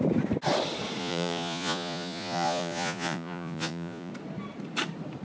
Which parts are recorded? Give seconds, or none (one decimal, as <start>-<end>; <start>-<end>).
0.0-1.0; 4.1-5.2